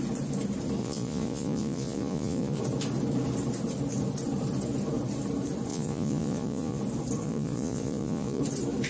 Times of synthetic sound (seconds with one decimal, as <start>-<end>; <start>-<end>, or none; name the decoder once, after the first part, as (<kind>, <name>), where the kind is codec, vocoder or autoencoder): 0.8-2.6 (vocoder, Vocos); 5.7-6.8; 7.2-8.4